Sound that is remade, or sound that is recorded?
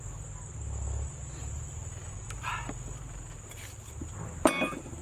recorded